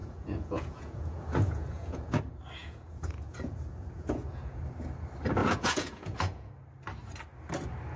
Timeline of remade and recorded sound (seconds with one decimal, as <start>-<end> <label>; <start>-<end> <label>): 0.0-2.2 remade; 2.2-2.6 recorded; 2.6-4.6 remade; 4.6-5.4 recorded; 5.4-6.5 remade; 6.5-8.0 recorded